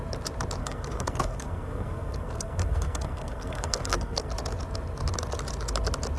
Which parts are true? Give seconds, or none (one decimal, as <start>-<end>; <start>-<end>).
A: 0.0-0.6; 4.3-6.2